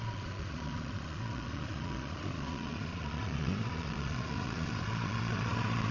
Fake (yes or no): yes